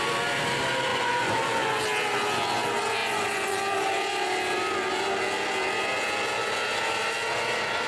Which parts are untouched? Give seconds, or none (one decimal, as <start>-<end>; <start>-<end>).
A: 0.0-0.9; 1.8-3.0; 3.6-7.9